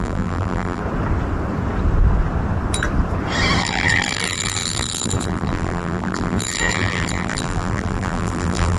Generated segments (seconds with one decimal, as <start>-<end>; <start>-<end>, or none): 0.0-0.8; 3.6-8.8